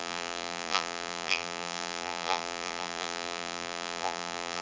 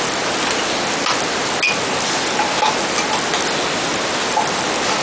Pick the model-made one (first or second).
first